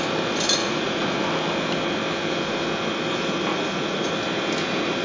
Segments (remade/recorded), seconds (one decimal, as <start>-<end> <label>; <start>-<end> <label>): 0.0-0.6 recorded; 0.6-1.2 remade; 1.2-3.5 recorded; 3.5-4.1 remade; 4.1-5.0 recorded